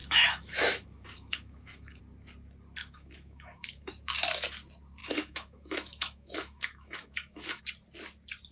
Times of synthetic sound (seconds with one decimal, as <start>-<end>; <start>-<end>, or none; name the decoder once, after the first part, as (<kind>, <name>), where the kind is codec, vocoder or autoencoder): 0.0-2.0 (autoencoder, DAC-VAE); 2.8-3.9; 5.0-7.6